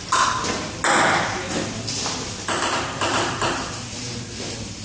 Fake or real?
real